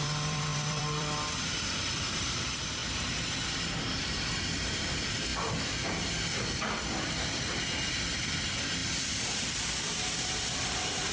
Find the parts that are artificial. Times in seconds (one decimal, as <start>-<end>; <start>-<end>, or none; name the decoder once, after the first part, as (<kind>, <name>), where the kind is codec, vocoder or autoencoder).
0.0-2.8 (vocoder, BigVGAN v2); 4.0-5.3; 7.9-8.8